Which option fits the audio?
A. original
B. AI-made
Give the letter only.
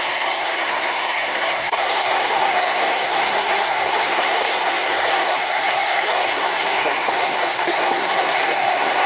B